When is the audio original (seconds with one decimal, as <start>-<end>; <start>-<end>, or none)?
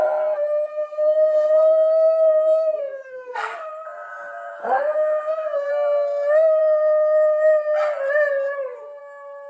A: 0.0-0.7; 3.7-4.6; 5.7-9.5